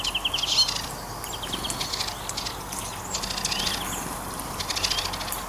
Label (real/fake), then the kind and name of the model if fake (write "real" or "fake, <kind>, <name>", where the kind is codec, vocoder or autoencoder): real